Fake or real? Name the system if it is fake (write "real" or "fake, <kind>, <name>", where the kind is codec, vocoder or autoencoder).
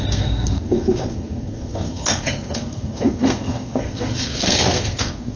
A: fake, codec, SNAC